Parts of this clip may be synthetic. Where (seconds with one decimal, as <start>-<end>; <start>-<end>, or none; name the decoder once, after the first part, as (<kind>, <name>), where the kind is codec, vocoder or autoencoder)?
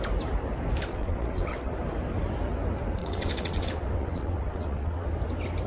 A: 0.9-1.7 (vocoder, WaveNeXt); 3.0-5.1